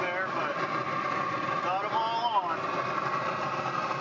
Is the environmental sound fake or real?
real